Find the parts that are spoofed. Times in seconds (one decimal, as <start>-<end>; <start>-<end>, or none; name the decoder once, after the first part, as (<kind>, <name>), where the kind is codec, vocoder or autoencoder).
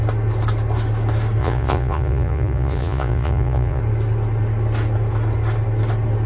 1.4-3.8 (vocoder, Vocos)